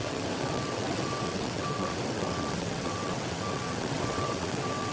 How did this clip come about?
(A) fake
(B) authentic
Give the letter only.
A